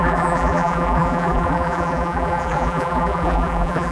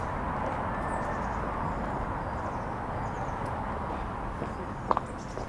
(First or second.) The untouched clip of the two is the second